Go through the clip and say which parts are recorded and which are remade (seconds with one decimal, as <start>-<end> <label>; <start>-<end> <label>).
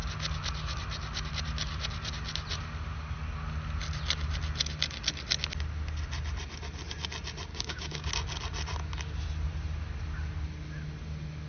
0.0-7.5 recorded; 7.5-8.1 remade; 8.1-11.5 recorded